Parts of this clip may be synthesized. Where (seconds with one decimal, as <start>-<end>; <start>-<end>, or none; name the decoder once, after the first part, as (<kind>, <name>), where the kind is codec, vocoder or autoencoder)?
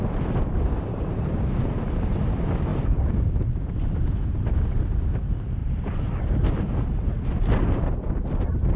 2.7-3.4 (vocoder, BigVGAN v2); 5.6-6.5